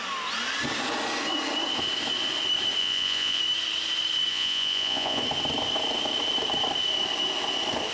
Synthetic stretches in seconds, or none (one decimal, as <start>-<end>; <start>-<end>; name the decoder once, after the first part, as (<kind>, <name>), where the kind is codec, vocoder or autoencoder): 2.8-3.4 (vocoder, Vocos); 4.3-5.2